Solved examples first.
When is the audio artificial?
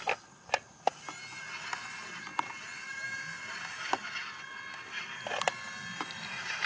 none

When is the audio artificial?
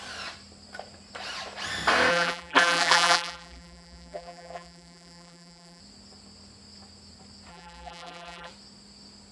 2.1-5.8 (vocoder, BigVGAN v2); 7.5-8.5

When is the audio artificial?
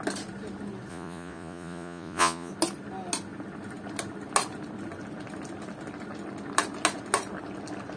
0.9-2.5 (vocoder, Vocos)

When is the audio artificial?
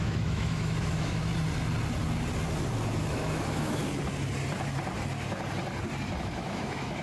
0.0-1.3 (autoencoder, DAC-VAE); 3.1-3.8; 6.2-7.0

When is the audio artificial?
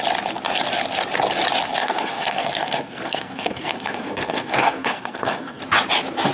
1.8-5.6 (codec, SNAC)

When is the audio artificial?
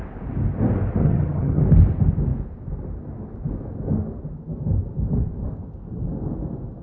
1.0-1.6 (vocoder, HiFi-GAN)